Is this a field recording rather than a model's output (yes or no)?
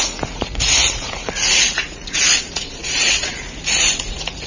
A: no